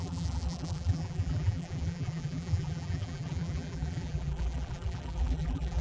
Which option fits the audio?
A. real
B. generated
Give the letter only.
B